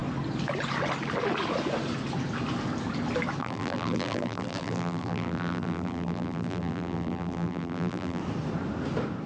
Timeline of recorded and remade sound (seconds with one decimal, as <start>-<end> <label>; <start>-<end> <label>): 0.0-3.4 recorded; 3.4-8.2 remade; 8.2-9.3 recorded